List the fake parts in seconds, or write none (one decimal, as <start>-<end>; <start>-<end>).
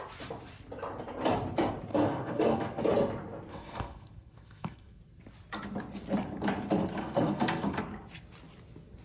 1.9-2.8; 3.5-5.0; 7.0-7.8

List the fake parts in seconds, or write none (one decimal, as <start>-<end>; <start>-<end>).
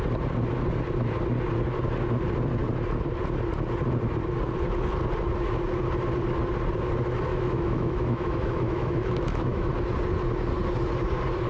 7.3-9.7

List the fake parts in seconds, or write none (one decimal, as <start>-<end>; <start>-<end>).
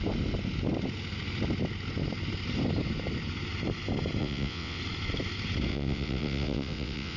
4.2-4.8; 5.7-7.2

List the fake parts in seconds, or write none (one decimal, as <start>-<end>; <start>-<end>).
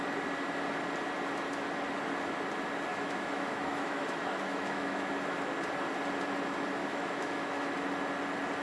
2.9-5.1; 6.8-7.7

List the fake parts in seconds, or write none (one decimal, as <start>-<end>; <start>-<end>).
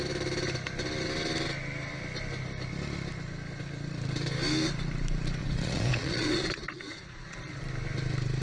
5.4-7.6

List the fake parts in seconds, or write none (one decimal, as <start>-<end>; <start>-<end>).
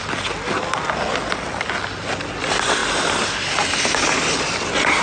none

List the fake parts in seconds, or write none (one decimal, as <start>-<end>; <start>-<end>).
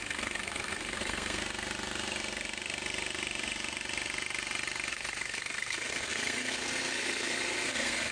0.0-1.4; 4.9-8.1